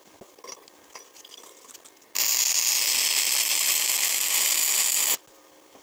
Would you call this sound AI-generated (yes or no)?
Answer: no